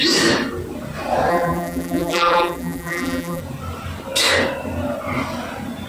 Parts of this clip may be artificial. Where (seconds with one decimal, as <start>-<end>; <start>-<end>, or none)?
1.3-3.4